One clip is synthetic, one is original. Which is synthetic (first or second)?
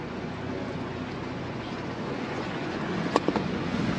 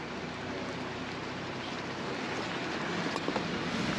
first